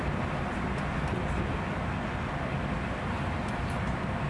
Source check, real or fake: real